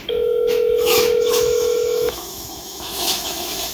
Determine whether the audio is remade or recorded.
remade